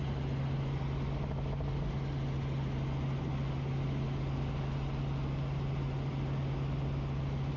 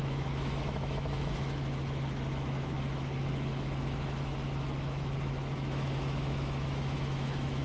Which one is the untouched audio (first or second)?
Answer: first